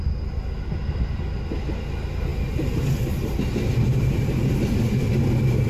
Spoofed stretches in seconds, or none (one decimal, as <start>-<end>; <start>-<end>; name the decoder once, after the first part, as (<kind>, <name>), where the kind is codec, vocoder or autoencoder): none